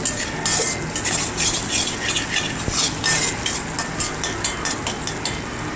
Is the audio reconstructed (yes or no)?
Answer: no